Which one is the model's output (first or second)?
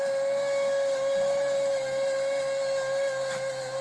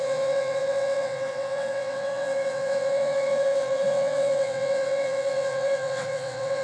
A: second